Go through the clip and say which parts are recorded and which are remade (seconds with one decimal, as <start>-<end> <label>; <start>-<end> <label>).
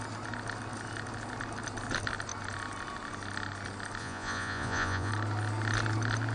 0.0-4.0 recorded; 4.0-5.1 remade; 5.1-6.3 recorded